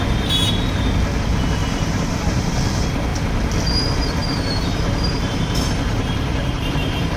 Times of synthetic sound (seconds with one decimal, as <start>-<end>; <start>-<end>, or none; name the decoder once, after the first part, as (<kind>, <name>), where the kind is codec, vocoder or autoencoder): 1.6-2.3 (vocoder, BigVGAN v2); 4.2-7.2